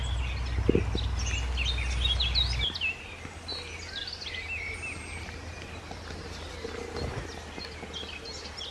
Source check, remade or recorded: recorded